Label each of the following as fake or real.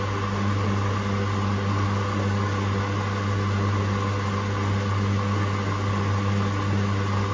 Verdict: real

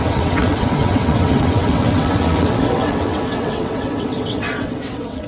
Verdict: fake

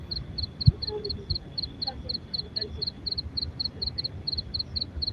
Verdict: real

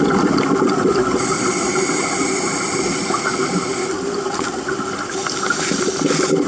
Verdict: real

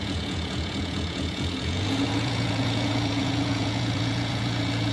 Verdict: fake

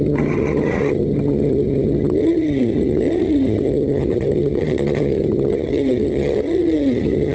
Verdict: fake